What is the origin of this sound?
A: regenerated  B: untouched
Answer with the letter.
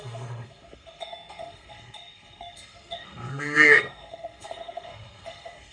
A